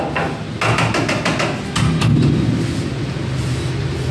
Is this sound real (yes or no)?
yes